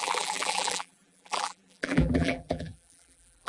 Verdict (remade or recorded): remade